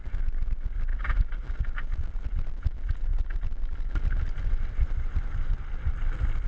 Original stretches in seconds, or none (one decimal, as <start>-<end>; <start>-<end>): 0.0-6.5